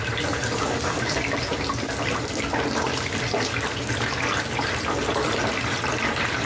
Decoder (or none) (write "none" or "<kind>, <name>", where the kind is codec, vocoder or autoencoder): none